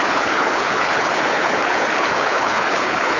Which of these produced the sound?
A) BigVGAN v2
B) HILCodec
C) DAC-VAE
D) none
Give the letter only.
B